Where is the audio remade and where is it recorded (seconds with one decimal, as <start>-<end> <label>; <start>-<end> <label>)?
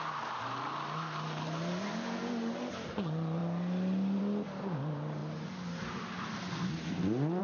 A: 0.0-7.4 recorded